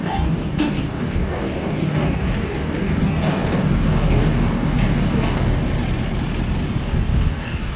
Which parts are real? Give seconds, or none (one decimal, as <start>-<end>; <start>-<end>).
5.7-6.8